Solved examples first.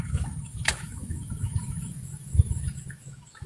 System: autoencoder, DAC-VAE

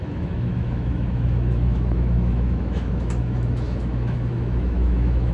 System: autoencoder, DAC-VAE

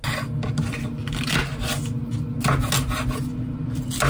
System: none